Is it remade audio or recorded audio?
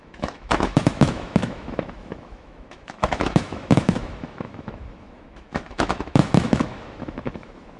remade